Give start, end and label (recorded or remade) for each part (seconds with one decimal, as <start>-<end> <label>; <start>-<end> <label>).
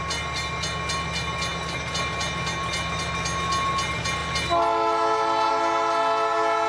0.0-6.7 recorded